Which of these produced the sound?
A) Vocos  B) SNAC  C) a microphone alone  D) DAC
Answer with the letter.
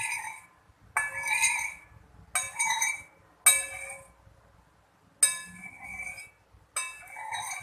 C